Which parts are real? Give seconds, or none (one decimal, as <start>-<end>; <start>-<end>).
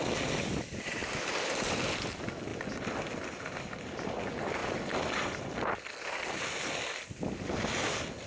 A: 0.0-1.0; 2.1-8.3